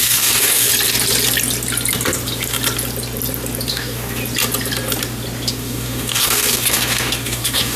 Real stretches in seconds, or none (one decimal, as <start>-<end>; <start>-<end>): 0.7-3.7; 4.2-5.5